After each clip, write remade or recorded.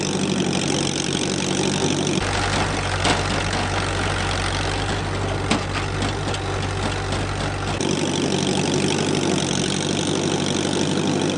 recorded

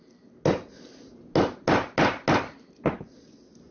recorded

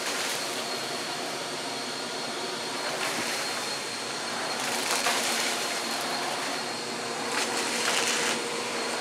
remade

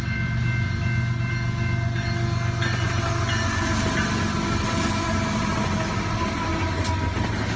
recorded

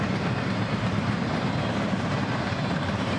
remade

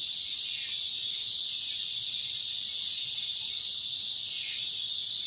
recorded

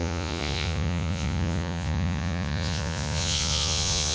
remade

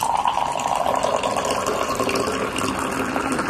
recorded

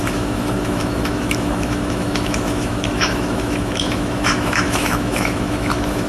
remade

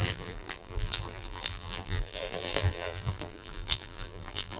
remade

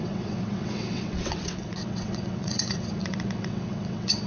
remade